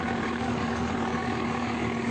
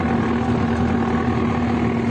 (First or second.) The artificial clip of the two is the first